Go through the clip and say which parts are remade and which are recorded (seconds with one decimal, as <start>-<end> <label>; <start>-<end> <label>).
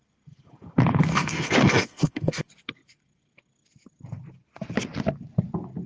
0.0-1.1 recorded; 1.1-2.4 remade; 2.4-5.9 recorded